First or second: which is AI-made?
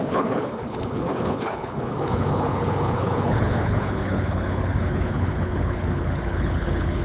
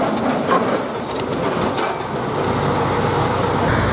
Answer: first